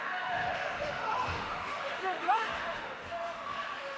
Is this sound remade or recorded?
remade